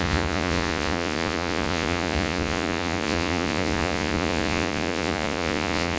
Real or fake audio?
fake